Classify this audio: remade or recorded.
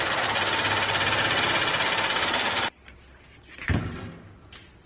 recorded